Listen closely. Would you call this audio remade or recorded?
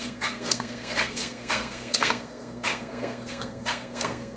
remade